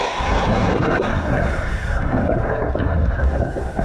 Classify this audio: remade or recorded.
remade